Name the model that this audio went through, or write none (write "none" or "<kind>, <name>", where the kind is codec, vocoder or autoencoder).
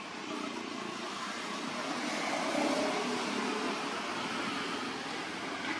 none